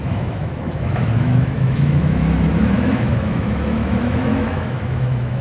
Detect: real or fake fake